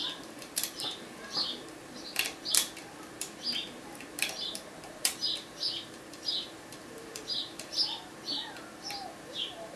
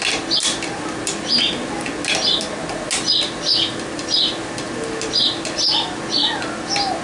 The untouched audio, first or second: second